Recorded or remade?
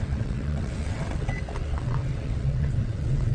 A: remade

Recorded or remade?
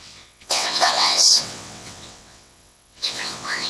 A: remade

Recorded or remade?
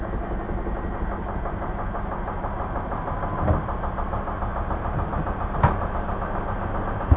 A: recorded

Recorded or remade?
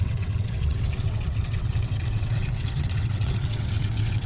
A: remade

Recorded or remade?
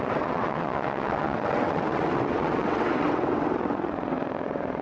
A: remade